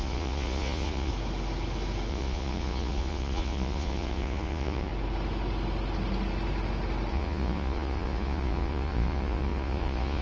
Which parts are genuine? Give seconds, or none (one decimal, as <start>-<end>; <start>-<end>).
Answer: 1.1-2.1; 4.9-7.1